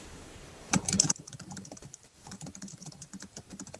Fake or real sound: fake